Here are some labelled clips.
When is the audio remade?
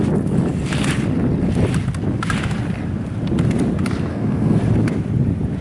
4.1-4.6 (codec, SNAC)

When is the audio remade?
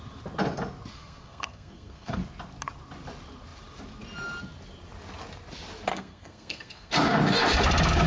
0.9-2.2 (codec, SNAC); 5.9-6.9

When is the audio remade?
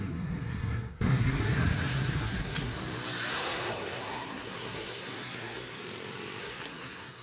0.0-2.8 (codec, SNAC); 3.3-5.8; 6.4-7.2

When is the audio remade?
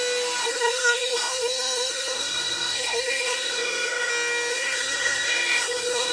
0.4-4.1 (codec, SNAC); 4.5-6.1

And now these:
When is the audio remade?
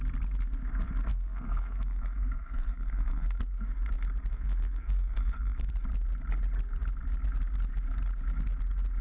1.1-3.4 (codec, SNAC); 4.3-5.7